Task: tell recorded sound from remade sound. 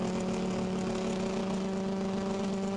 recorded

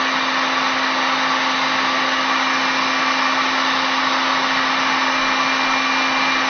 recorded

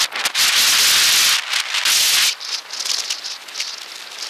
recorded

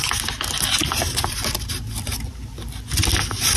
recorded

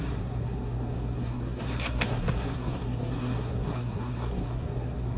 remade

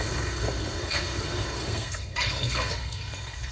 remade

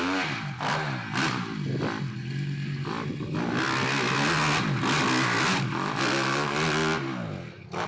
recorded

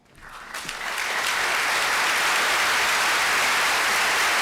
recorded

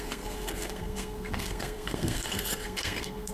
remade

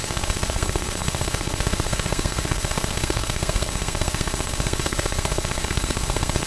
remade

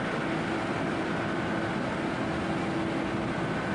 recorded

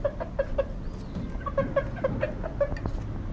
recorded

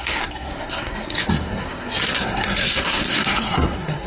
remade